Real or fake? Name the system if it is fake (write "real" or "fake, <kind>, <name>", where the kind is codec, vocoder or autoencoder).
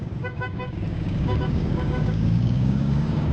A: fake, codec, DAC